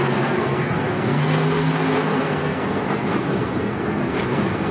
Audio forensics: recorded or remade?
remade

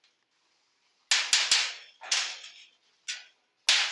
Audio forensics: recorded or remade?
recorded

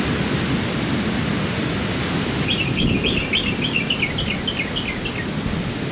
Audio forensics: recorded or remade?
recorded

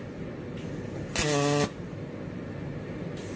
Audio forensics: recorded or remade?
recorded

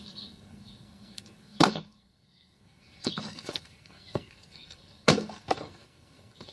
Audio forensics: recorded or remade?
remade